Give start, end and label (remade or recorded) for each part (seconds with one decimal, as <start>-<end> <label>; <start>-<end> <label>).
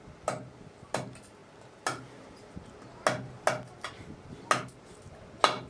0.0-5.7 recorded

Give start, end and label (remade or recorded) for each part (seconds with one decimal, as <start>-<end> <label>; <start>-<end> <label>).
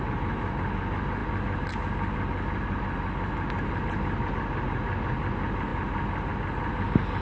0.0-7.2 recorded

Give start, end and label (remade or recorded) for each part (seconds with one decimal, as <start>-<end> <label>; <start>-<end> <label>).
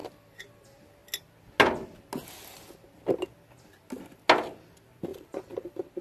0.0-0.6 remade; 0.6-5.1 recorded; 5.1-6.0 remade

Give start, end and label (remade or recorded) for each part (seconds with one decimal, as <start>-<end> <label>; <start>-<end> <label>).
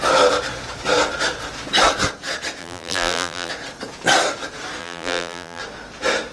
0.0-2.6 recorded; 2.6-3.5 remade; 3.5-4.8 recorded; 4.8-5.6 remade; 5.6-6.3 recorded